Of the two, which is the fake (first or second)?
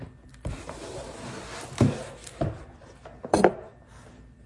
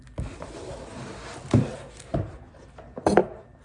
second